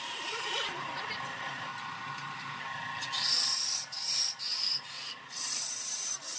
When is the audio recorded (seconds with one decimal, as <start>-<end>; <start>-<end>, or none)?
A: 1.7-4.6